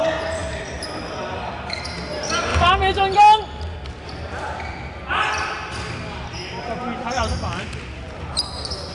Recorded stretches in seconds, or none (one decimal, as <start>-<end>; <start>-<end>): 0.0-0.4; 1.7-8.9